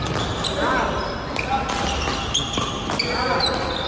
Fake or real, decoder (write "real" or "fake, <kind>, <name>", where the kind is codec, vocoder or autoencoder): real